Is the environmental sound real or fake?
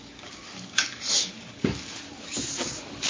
fake